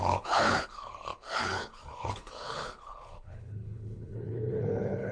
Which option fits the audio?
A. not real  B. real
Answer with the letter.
A